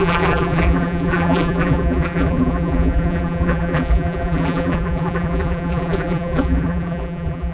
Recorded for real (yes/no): no